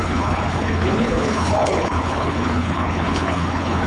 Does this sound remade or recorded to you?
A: remade